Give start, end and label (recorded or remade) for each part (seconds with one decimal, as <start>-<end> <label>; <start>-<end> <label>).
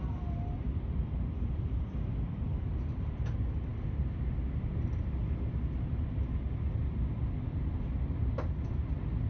0.0-9.3 recorded